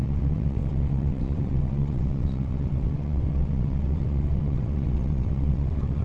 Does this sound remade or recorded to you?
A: remade